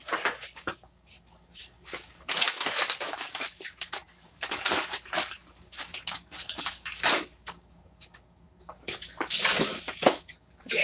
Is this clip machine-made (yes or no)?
yes